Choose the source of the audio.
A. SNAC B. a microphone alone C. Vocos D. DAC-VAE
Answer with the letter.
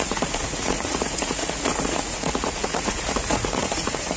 C